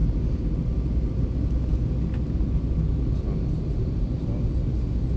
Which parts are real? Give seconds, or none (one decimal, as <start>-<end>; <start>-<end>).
0.0-5.2